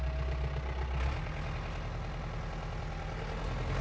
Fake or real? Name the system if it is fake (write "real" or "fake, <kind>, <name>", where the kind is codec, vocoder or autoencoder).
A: real